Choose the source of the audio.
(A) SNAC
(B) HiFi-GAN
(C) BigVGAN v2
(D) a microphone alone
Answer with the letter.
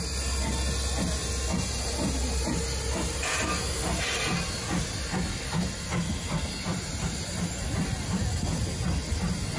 D